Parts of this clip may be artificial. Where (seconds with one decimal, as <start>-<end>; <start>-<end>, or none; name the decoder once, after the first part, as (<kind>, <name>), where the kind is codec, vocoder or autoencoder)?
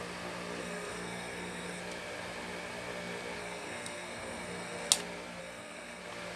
0.6-1.8 (codec, SNAC); 3.4-4.9; 5.4-6.0